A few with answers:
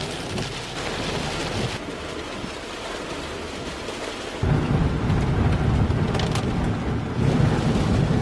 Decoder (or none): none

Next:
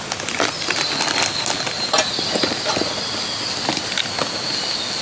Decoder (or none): none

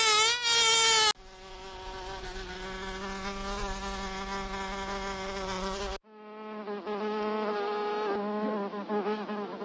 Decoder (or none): none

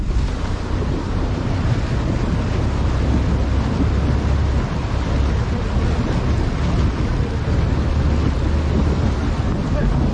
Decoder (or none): none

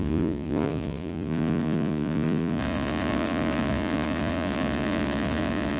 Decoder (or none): vocoder, Vocos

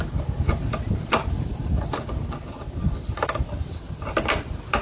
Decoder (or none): none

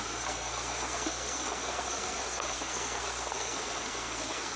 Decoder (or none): codec, SNAC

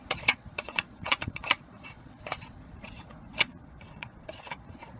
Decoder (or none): vocoder, Vocos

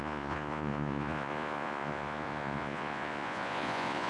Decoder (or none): vocoder, Vocos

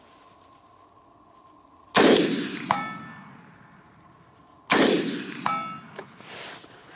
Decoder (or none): none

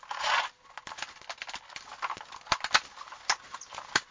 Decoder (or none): none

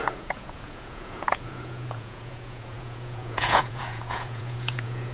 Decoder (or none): vocoder, Vocos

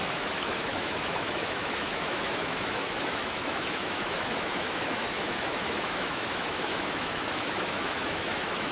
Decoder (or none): autoencoder, DAC-VAE